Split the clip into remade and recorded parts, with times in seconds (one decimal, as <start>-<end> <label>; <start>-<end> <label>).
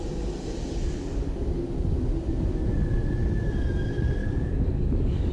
0.0-4.2 recorded; 4.2-5.3 remade